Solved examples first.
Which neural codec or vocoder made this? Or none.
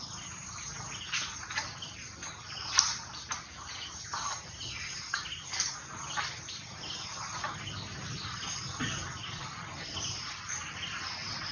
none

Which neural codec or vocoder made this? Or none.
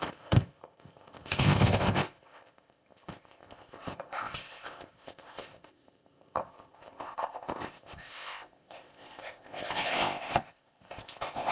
codec, ZipCodec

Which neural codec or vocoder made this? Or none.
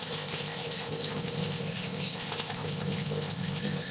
codec, ZipCodec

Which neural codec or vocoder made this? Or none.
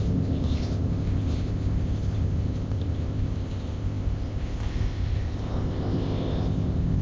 codec, ZipCodec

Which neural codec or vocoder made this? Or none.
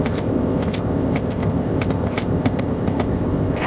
codec, ZipCodec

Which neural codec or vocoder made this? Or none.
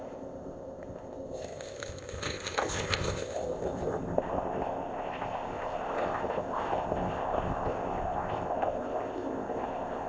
codec, ZipCodec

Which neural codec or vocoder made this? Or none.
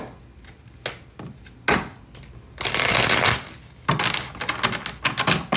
none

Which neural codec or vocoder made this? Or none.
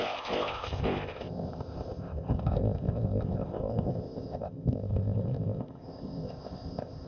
codec, ZipCodec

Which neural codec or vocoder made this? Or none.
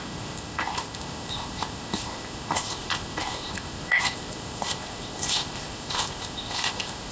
codec, ZipCodec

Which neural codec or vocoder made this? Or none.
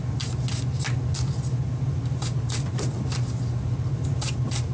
none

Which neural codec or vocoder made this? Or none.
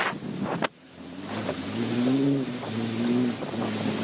none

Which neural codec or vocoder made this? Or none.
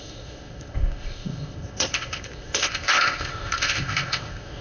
codec, ZipCodec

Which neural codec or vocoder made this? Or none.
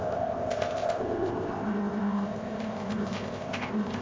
codec, ZipCodec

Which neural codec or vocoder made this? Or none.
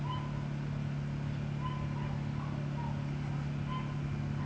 none